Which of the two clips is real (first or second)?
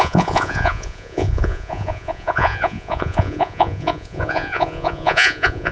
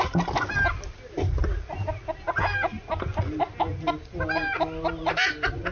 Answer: second